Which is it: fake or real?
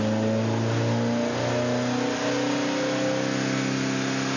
real